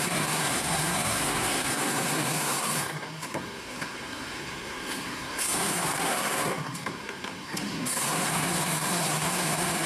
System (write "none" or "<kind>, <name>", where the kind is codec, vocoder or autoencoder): codec, SNAC